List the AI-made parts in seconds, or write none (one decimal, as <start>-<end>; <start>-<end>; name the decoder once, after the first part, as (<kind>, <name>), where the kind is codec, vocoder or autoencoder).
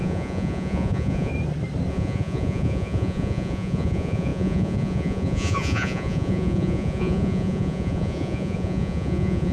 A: 0.0-1.3 (vocoder, Vocos); 1.9-9.5